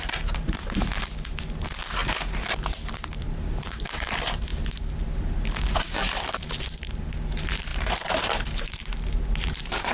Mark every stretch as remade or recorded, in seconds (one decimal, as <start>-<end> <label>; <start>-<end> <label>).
0.0-2.0 remade; 2.0-3.2 recorded; 3.2-9.9 remade